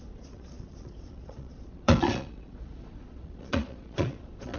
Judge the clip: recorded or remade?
remade